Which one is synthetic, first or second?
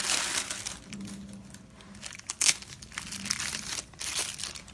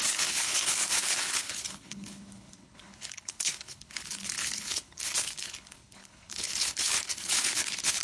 second